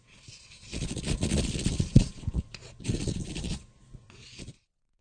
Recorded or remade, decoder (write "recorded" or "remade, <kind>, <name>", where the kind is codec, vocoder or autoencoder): remade, vocoder, Vocos